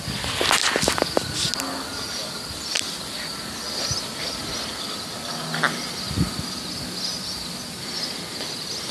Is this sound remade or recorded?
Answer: recorded